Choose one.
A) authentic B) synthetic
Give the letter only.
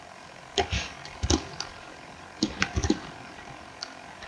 B